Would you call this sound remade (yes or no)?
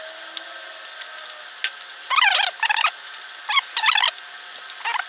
no